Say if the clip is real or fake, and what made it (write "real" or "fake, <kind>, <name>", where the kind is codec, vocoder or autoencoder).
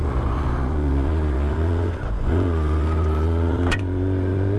fake, vocoder, Vocos